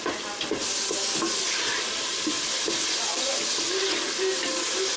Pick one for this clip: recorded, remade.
recorded